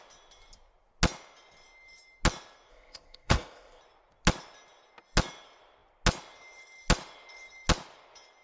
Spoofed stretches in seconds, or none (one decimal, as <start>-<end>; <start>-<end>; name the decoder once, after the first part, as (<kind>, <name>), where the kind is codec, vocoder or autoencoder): 2.7-3.8 (codec, ZipCodec)